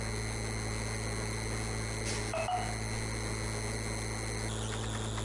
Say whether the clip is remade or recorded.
recorded